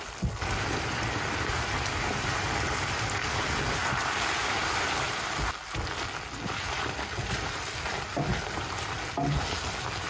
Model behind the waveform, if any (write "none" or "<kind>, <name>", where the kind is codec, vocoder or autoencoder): none